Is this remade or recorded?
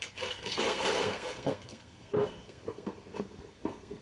remade